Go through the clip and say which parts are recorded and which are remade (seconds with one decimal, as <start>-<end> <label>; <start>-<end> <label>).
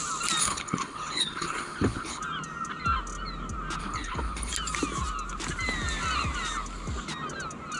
0.0-0.4 recorded; 0.4-2.2 remade; 2.2-3.8 recorded; 3.8-4.5 remade; 4.5-7.8 recorded